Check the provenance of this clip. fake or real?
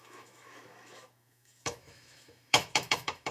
fake